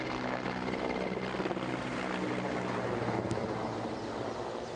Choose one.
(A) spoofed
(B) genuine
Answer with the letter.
B